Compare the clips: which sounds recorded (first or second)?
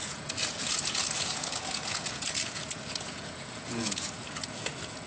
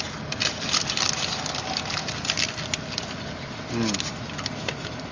second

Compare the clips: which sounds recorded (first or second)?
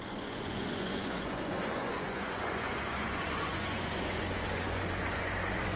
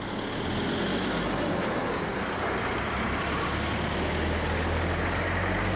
second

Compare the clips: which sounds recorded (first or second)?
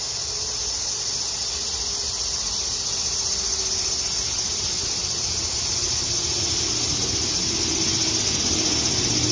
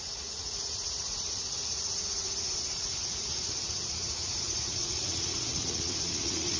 first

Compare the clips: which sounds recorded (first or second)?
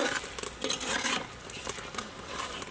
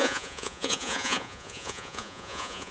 first